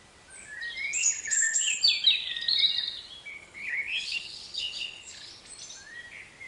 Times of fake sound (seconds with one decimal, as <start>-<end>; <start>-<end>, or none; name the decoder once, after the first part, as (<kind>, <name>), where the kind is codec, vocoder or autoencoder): 1.0-1.8 (codec, HILCodec); 3.3-5.3